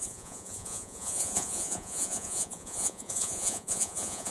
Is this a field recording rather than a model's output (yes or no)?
no